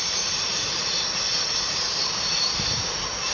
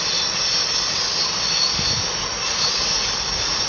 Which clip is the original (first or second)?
second